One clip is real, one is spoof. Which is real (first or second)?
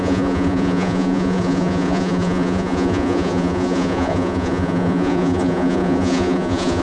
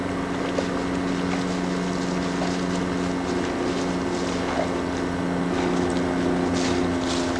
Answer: second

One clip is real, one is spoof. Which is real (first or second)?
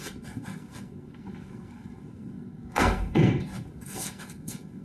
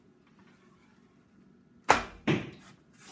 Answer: second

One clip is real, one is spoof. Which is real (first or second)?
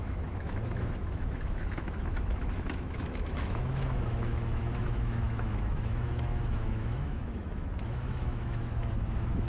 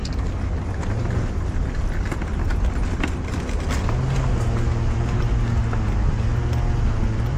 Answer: second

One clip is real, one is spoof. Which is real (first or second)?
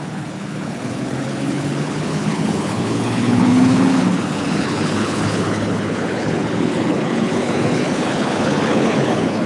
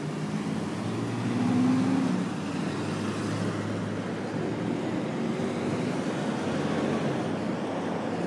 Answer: second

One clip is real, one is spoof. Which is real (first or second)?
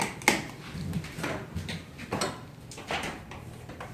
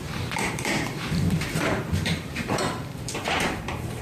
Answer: first